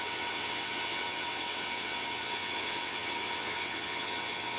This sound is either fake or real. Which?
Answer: fake